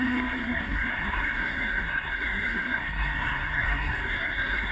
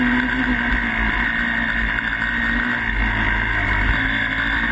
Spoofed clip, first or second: first